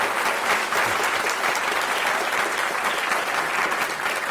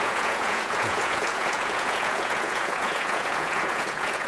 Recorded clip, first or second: first